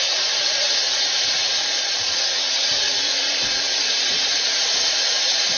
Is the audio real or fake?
fake